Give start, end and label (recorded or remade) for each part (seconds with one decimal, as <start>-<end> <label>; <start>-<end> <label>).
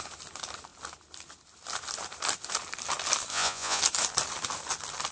0.0-3.3 recorded; 3.3-3.8 remade; 3.8-5.1 recorded